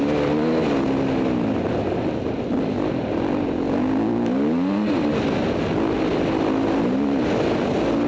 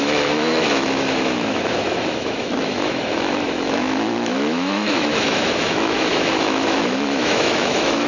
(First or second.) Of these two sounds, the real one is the first